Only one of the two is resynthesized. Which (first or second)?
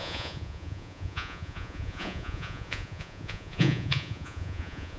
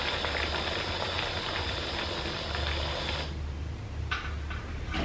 first